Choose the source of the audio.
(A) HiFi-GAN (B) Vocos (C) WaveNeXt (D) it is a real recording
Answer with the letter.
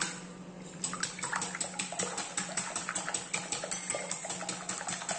D